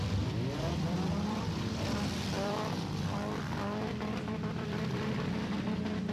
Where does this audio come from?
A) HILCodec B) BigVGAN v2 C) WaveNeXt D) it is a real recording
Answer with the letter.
B